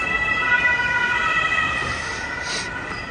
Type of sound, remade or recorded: recorded